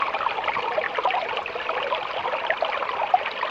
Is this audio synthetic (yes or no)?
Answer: no